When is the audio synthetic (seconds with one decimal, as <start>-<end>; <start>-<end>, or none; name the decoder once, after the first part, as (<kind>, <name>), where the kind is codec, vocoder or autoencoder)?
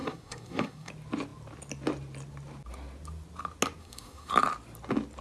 0.0-0.9 (codec, SNAC); 3.8-4.3